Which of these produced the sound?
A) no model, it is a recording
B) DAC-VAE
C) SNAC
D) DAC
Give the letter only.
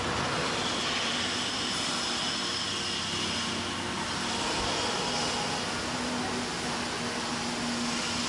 A